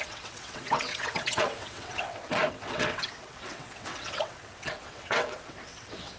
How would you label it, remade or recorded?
remade